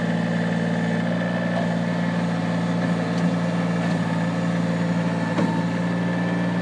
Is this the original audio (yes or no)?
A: yes